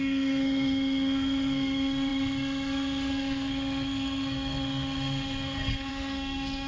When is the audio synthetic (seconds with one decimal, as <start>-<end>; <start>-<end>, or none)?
0.0-6.7